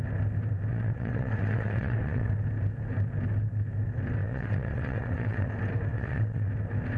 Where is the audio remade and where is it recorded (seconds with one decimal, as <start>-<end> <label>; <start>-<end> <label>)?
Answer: 0.0-0.7 recorded; 0.7-2.3 remade; 2.3-4.2 recorded; 4.2-5.5 remade; 5.5-5.9 recorded; 5.9-6.5 remade; 6.5-7.0 recorded